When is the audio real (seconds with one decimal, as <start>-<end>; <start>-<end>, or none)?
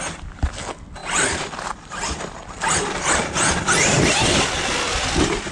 0.0-5.5